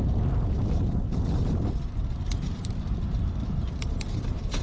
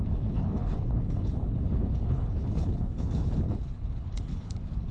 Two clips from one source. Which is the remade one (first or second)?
second